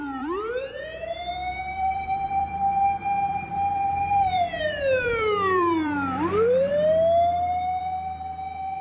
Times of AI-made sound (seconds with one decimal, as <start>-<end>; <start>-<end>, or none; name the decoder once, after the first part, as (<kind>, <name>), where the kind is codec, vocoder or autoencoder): 0.0-6.7 (vocoder, BigVGAN v2); 7.8-8.8